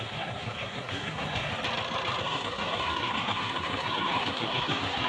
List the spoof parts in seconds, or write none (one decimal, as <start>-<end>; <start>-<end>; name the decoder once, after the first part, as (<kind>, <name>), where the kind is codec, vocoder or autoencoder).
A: 0.0-1.5 (codec, SNAC); 2.2-5.1